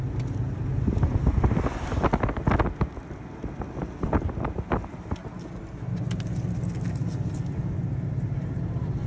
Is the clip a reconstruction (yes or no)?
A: no